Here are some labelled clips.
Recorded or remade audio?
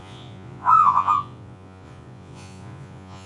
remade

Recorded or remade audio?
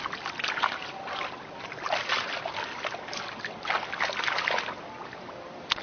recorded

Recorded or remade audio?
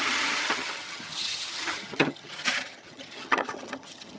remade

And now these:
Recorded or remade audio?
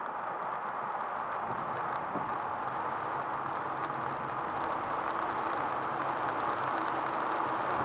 recorded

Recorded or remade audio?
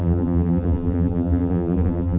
remade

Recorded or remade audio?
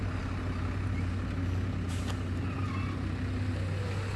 recorded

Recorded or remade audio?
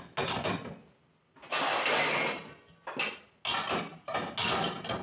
recorded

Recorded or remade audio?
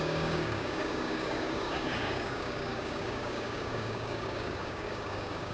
remade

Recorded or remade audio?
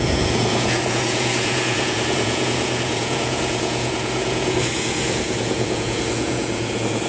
remade